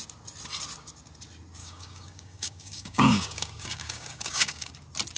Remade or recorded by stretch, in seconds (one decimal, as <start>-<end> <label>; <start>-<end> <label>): 0.0-1.6 recorded; 1.6-4.7 remade; 4.7-5.2 recorded

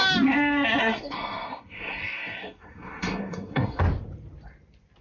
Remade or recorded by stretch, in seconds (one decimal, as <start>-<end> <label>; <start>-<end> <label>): 0.0-0.8 recorded; 0.8-3.8 remade; 3.8-5.0 recorded

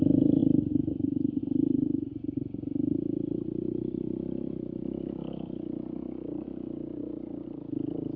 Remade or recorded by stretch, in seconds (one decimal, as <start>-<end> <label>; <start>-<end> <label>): 0.0-0.4 recorded; 0.4-1.4 remade; 1.4-8.2 recorded

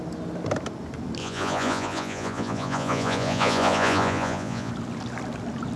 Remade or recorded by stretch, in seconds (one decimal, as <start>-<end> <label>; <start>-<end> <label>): 0.0-1.2 recorded; 1.2-4.7 remade; 4.7-5.8 recorded